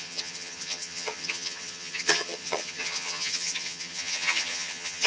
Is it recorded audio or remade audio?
remade